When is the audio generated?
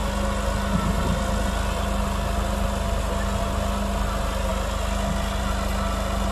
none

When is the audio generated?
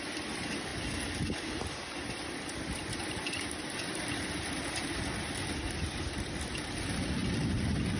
0.7-5.5 (vocoder, BigVGAN v2)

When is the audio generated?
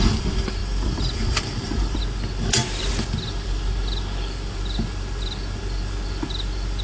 0.6-2.0 (vocoder, BigVGAN v2)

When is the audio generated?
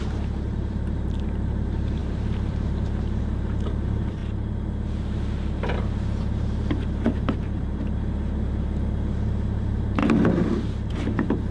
0.0-4.2 (vocoder, BigVGAN v2); 4.9-10.0; 10.9-11.5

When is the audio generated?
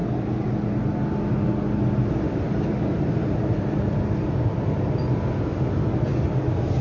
2.2-5.5 (vocoder, BigVGAN v2)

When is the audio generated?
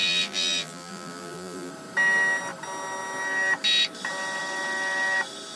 0.0-1.7 (vocoder, BigVGAN v2)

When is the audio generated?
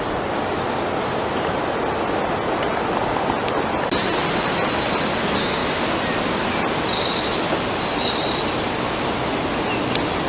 2.7-3.4 (vocoder, BigVGAN v2); 5.6-7.1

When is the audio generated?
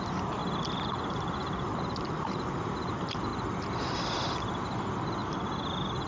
0.0-0.4 (vocoder, BigVGAN v2); 1.0-3.3; 4.0-5.2